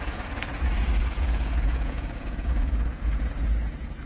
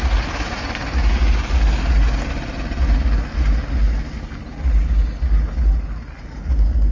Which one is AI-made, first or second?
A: first